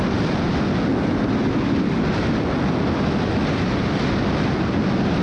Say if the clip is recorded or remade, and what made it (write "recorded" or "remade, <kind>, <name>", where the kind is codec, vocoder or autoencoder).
recorded